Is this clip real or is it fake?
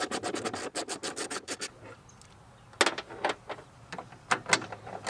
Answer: real